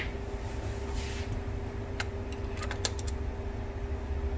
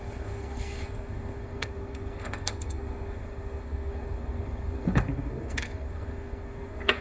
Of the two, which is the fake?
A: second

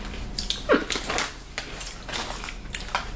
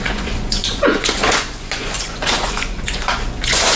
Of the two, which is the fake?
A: second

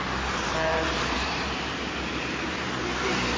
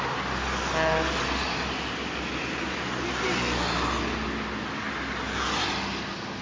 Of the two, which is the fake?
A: first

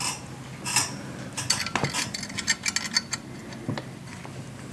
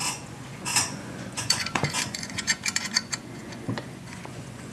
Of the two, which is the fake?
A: second